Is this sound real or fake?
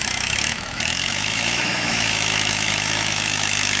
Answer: fake